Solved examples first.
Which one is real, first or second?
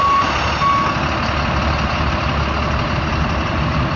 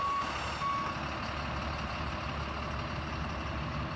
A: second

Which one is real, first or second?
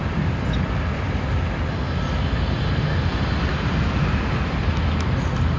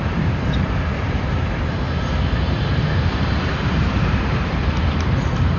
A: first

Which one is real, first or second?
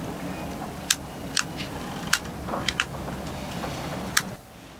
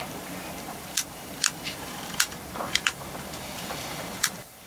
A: first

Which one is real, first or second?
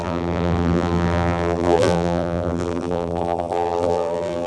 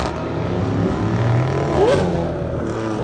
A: second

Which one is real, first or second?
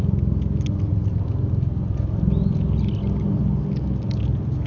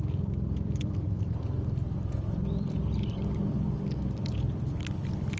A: first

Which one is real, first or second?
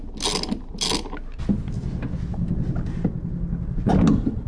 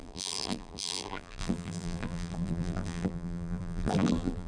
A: first